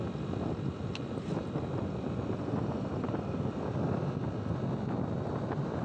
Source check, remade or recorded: recorded